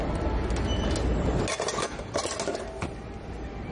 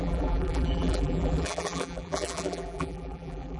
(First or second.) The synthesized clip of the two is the second